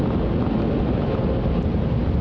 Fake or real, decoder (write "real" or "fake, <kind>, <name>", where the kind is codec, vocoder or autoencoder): real